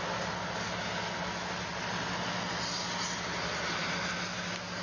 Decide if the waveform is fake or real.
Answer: real